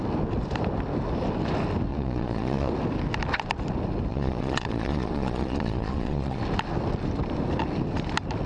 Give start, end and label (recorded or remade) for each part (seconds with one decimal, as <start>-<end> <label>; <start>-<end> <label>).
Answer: 0.0-1.9 recorded; 1.9-2.7 remade; 2.7-4.1 recorded; 4.1-6.4 remade; 6.4-8.5 recorded